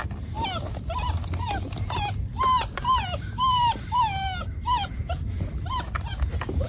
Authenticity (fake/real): real